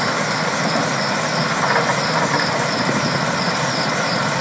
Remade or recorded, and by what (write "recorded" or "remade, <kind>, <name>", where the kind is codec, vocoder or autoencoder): recorded